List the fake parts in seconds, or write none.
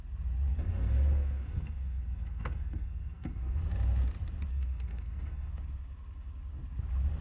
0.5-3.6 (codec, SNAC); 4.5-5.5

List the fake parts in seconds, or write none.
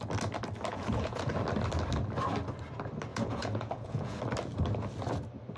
0.7-1.3 (vocoder, Vocos); 3.1-4.2